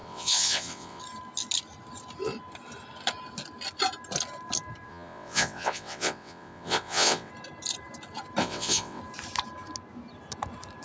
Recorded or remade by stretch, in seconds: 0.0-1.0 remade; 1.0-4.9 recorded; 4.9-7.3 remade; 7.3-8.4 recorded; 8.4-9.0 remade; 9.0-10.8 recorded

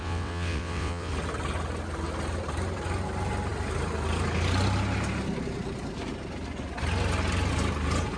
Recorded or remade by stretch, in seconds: 0.0-1.1 remade; 1.1-8.2 recorded

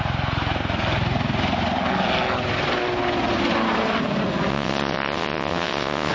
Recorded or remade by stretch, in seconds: 0.0-4.5 recorded; 4.5-6.1 remade

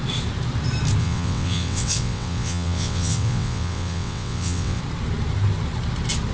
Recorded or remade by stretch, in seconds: 0.0-1.0 recorded; 1.0-4.8 remade; 4.8-6.3 recorded

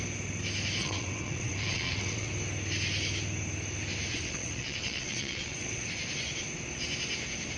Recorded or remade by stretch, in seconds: 0.0-0.8 recorded; 0.8-2.3 remade; 2.3-4.1 recorded; 4.1-5.9 remade; 5.9-7.6 recorded

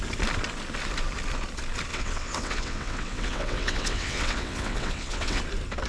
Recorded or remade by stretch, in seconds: 0.0-1.9 recorded; 1.9-5.4 remade; 5.4-5.9 recorded

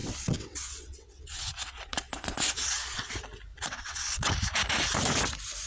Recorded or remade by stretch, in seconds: 0.0-3.1 remade; 3.1-3.5 recorded; 3.5-4.3 remade; 4.3-5.7 recorded